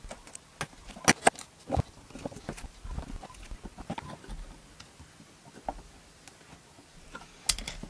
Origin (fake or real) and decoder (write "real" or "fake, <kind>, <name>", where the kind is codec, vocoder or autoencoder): real